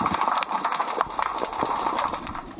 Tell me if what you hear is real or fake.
real